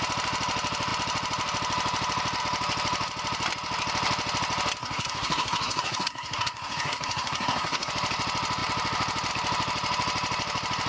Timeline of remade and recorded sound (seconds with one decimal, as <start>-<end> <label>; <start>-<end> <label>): 0.0-4.8 recorded; 4.8-7.9 remade; 7.9-10.9 recorded